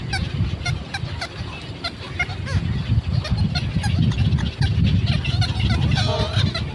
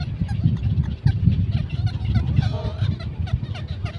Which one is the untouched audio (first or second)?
first